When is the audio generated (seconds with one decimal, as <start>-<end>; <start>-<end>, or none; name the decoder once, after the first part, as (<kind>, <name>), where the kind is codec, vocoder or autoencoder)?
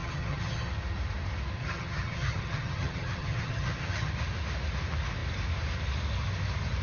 0.0-0.7 (vocoder, HiFi-GAN); 1.6-4.1